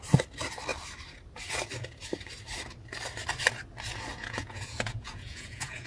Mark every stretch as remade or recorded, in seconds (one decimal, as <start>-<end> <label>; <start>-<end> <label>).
0.0-4.1 recorded; 4.1-5.9 remade